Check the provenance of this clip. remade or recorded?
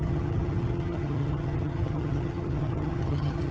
remade